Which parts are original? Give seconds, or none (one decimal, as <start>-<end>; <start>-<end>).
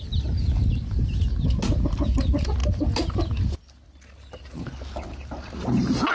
0.0-6.1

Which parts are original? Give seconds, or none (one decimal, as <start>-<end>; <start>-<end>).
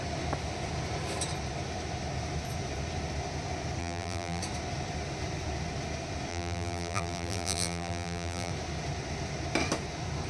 0.0-3.8; 4.4-6.3; 8.5-10.3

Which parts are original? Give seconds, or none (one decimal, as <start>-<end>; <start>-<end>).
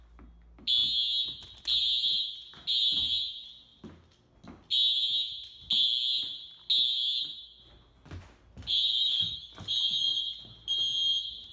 0.0-8.9; 9.5-11.5